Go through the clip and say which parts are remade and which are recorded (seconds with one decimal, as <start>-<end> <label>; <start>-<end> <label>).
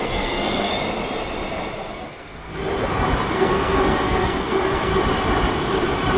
0.0-0.7 remade; 0.7-1.9 recorded; 1.9-2.5 remade; 2.5-3.3 recorded; 3.3-4.9 remade; 4.9-6.2 recorded